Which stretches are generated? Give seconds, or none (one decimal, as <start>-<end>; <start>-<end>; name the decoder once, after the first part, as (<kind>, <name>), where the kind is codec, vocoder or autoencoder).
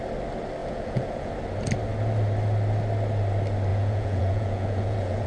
0.6-1.3 (vocoder, Vocos); 3.7-5.3